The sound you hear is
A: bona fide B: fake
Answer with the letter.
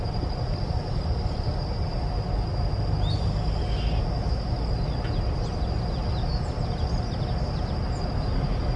A